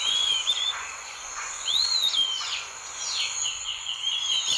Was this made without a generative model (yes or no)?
no